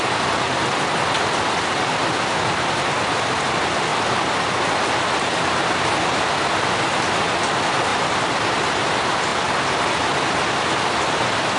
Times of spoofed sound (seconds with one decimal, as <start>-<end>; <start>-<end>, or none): none